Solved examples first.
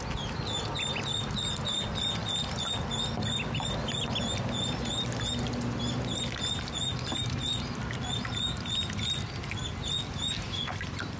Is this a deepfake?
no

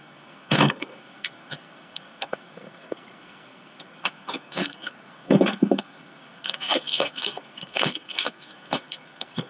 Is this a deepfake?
yes